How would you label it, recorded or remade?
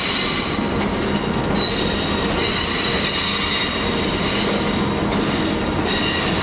recorded